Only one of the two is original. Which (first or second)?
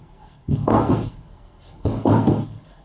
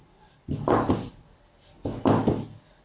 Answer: second